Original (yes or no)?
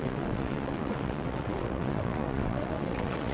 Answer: no